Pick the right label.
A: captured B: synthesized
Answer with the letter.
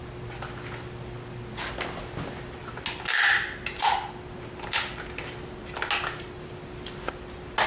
A